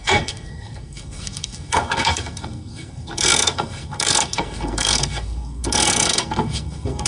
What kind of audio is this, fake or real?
fake